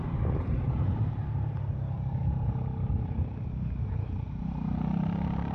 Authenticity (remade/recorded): remade